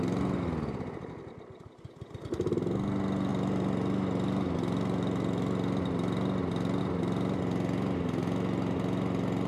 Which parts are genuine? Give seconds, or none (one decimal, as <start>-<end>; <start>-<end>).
0.0-9.5